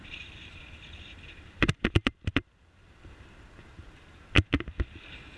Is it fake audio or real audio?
fake